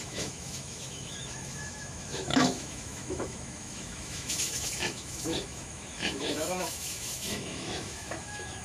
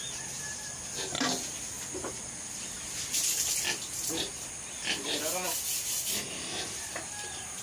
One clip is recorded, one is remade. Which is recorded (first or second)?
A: second